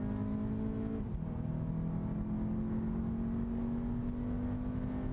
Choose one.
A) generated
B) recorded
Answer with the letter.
B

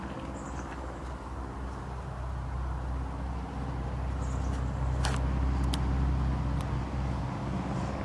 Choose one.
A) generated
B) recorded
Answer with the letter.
B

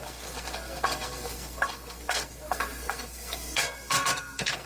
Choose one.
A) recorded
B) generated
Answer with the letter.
B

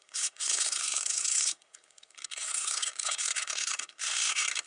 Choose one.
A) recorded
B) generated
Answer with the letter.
B